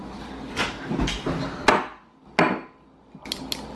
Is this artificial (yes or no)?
no